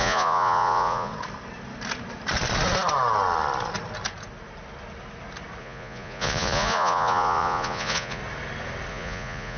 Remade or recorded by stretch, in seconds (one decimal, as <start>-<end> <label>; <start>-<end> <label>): 0.0-1.1 remade; 1.1-5.6 recorded; 5.6-8.2 remade; 8.2-8.9 recorded; 8.9-9.6 remade